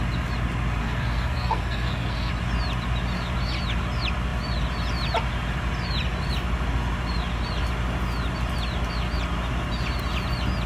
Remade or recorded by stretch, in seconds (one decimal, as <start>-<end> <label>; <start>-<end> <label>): 0.0-0.8 recorded; 0.8-2.3 remade; 2.3-10.7 recorded